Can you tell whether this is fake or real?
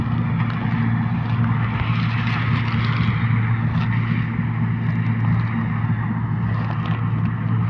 real